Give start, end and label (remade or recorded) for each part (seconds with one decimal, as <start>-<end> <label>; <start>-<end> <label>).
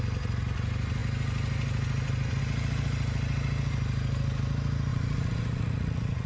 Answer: 0.0-4.9 recorded; 4.9-6.3 remade